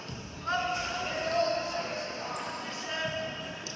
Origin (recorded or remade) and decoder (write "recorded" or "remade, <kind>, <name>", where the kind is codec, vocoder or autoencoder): recorded